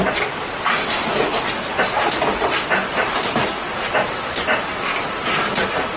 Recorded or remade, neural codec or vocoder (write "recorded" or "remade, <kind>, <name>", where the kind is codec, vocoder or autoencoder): recorded